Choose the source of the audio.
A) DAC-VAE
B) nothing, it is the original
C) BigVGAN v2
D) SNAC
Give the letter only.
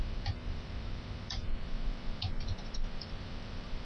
C